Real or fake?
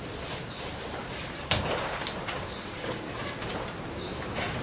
fake